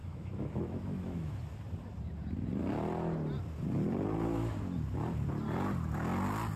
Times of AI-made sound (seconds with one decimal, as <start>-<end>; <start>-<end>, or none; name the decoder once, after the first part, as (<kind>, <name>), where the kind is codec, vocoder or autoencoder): 0.0-1.4 (autoencoder, DAC-VAE)